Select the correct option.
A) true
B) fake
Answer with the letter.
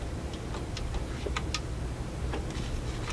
A